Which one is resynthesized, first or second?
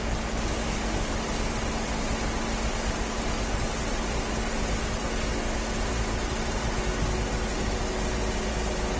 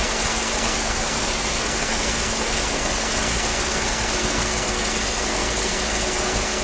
second